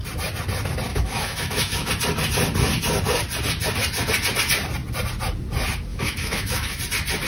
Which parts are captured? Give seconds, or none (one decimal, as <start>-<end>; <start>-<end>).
0.0-0.9; 1.9-5.9; 6.8-7.3